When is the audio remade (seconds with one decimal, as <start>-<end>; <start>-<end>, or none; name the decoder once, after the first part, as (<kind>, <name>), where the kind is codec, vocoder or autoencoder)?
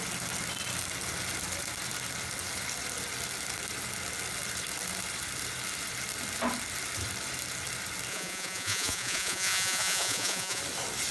8.1-10.6 (vocoder, Vocos)